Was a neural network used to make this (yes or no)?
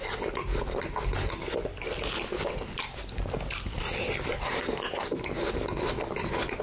no